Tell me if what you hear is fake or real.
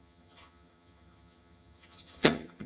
fake